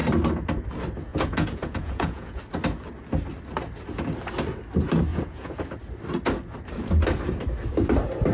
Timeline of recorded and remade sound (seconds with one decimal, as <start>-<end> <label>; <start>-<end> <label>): 0.0-1.1 recorded; 1.1-2.4 remade; 2.4-5.1 recorded; 5.1-5.6 remade; 5.6-8.3 recorded